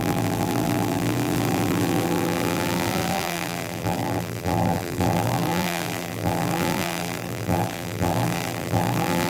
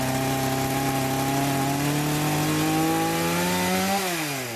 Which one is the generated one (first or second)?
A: first